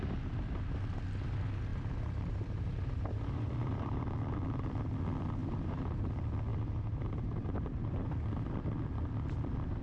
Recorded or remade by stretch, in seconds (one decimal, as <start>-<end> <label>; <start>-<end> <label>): 0.0-1.7 recorded; 1.7-4.0 remade; 4.0-5.4 recorded; 5.4-6.0 remade; 6.0-6.5 recorded; 6.5-8.1 remade; 8.1-9.8 recorded